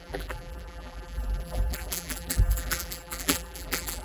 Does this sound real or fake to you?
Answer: fake